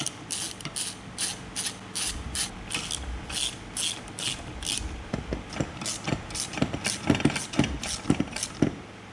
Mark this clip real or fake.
real